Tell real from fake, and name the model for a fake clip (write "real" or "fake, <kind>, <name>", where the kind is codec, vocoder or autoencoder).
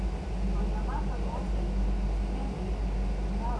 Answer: real